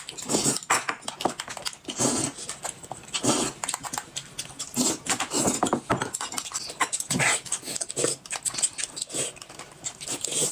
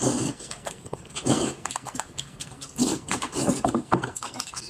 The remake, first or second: second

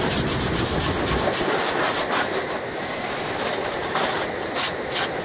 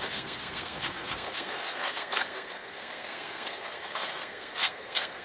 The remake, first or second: second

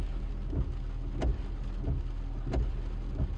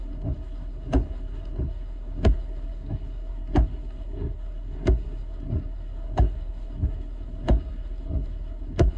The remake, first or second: second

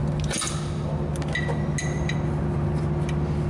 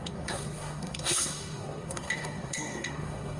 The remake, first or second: second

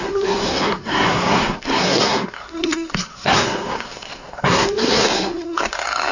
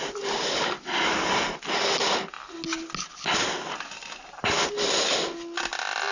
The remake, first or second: first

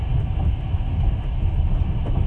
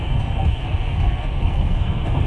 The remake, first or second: second